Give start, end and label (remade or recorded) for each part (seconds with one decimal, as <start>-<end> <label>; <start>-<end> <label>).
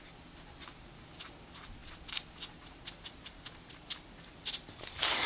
0.0-5.3 recorded